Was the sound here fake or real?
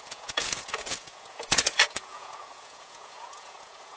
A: fake